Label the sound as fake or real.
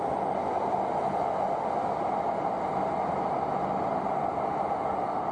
real